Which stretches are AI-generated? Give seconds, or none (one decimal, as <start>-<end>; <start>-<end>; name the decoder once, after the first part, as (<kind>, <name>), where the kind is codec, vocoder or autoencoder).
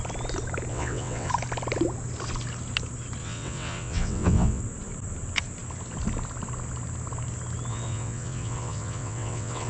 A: 0.7-1.3 (vocoder, WaveNeXt); 3.2-4.6; 7.7-9.7